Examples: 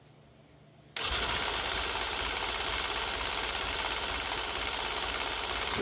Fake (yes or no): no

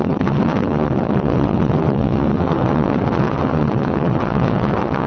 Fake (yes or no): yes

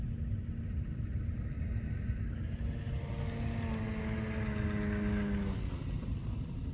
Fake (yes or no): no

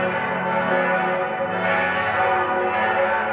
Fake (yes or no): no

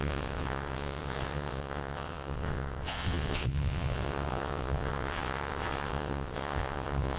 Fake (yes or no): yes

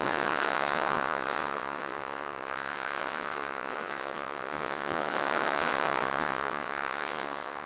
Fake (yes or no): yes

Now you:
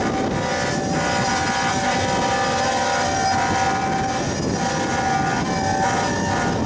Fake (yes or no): no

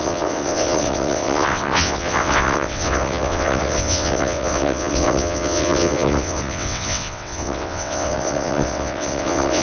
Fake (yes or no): yes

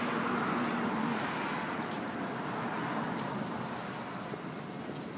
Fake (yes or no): no